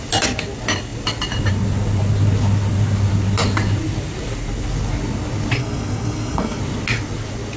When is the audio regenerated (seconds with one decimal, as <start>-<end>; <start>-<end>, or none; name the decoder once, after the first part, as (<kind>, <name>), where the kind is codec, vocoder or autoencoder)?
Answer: 5.6-6.6 (codec, SNAC)